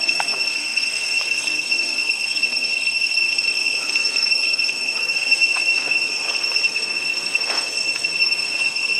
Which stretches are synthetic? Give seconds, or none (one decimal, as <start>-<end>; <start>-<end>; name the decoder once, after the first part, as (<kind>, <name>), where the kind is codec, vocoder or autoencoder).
0.0-9.0 (codec, SNAC)